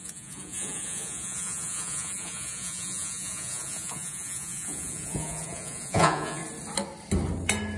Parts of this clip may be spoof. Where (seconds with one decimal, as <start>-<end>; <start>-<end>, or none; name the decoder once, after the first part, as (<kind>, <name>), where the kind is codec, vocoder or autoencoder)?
0.0-6.4 (vocoder, Vocos)